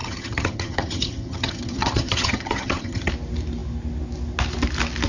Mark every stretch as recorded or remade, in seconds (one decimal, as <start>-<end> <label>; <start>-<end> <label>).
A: 0.0-3.1 remade; 3.1-5.1 recorded